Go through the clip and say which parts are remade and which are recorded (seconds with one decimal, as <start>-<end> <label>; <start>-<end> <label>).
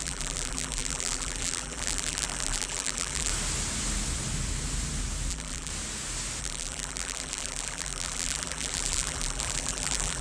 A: 0.0-3.3 remade; 3.3-5.3 recorded; 5.3-5.7 remade; 5.7-6.4 recorded; 6.4-10.2 remade